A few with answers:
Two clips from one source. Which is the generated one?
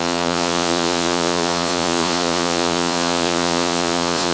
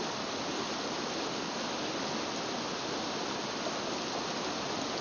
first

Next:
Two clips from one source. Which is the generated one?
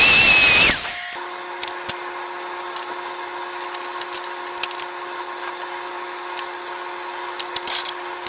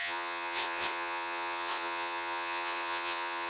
second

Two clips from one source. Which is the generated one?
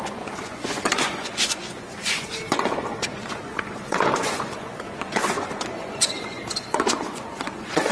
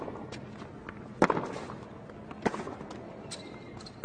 first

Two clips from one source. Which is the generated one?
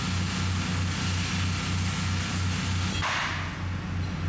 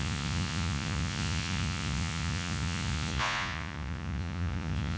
second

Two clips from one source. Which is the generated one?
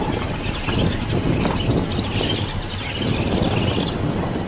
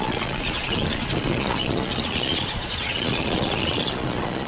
second